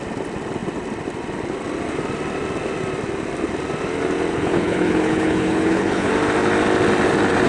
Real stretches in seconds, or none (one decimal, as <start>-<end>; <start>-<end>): 0.0-4.3; 6.1-7.5